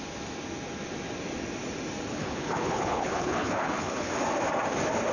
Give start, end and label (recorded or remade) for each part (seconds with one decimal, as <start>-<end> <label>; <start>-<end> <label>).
0.0-2.1 recorded; 2.1-4.1 remade; 4.1-5.1 recorded